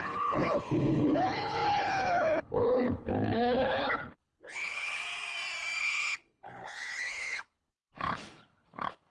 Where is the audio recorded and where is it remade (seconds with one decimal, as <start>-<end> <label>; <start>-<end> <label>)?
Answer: 0.0-5.0 remade; 5.0-5.8 recorded; 5.8-9.1 remade